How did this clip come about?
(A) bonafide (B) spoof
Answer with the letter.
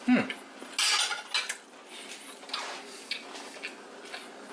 A